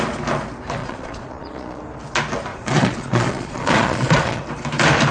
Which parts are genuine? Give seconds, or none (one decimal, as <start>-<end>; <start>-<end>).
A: 0.0-0.8; 1.8-2.5; 4.4-5.1

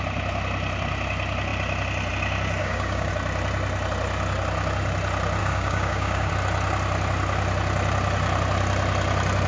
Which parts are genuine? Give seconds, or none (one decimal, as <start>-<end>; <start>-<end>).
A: 0.0-2.6; 3.1-5.4; 6.3-9.5

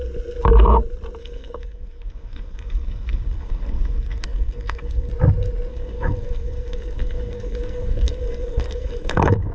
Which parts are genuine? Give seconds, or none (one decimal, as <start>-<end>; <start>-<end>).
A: 0.0-1.2; 5.1-5.7

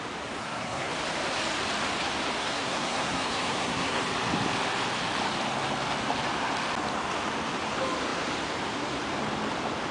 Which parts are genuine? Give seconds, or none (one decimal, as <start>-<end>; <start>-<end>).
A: 0.0-0.4; 0.9-2.4; 4.0-9.9

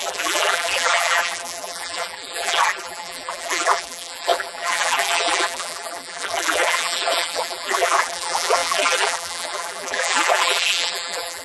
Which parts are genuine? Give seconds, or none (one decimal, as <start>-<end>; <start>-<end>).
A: none

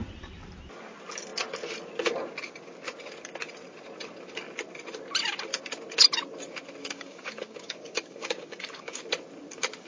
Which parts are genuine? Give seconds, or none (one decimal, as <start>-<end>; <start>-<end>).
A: 0.0-6.8; 9.0-9.9

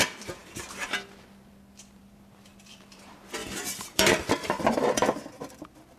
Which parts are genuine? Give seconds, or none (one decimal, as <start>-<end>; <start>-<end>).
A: 0.4-1.7